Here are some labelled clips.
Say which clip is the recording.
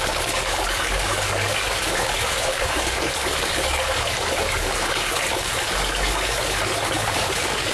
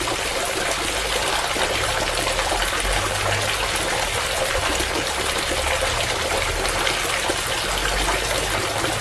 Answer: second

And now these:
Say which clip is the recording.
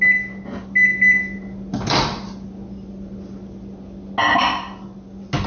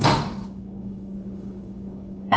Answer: first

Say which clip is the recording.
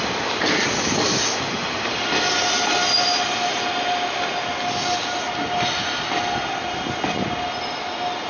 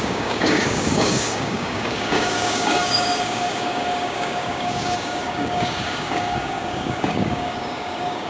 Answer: first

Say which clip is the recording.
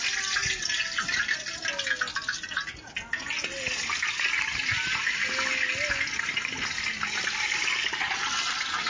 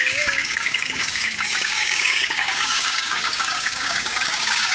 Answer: first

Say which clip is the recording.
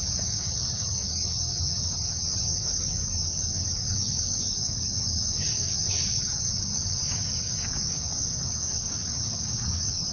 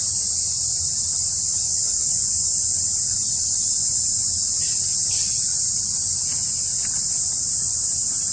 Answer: second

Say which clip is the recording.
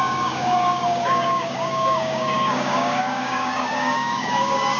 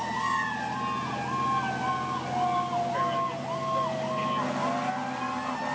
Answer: second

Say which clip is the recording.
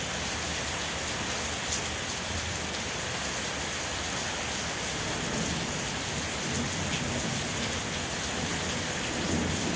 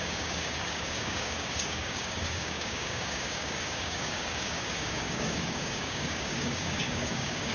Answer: first